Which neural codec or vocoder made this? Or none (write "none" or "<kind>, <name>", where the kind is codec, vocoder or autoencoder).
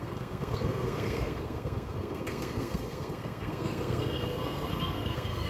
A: codec, SNAC